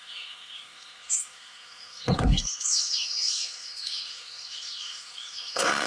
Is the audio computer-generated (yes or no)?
yes